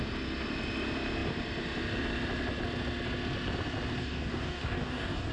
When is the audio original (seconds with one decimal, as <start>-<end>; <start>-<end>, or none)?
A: 0.0-4.0